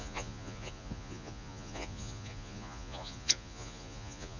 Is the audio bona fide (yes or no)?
no